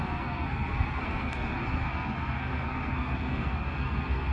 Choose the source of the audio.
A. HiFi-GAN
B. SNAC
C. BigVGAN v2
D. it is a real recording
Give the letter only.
B